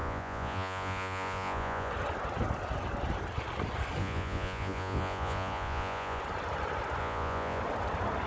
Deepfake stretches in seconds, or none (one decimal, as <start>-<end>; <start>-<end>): 0.0-1.9; 4.0-6.2; 7.0-7.6